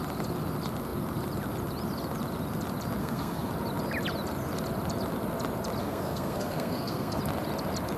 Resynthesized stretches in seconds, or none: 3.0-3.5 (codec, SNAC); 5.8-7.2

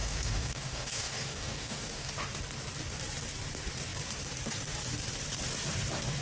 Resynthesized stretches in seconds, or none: 0.0-2.1 (codec, DAC)

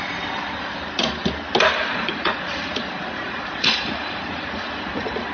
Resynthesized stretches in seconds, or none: 1.8-5.3 (vocoder, Vocos)

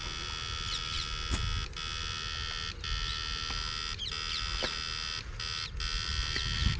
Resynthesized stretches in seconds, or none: none

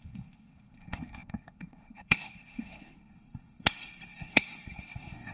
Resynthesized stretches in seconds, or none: 0.0-5.3 (codec, SNAC)

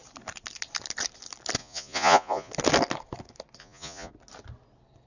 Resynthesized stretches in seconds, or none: 1.6-2.5 (vocoder, Vocos); 3.6-4.1

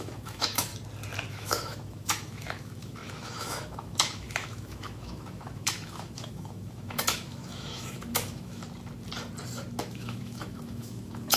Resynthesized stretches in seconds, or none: 0.0-0.7 (autoencoder, DAC-VAE); 1.3-8.6; 9.8-11.4

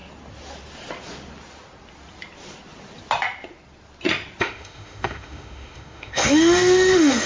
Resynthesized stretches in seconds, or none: 4.4-7.3 (autoencoder, DAC-VAE)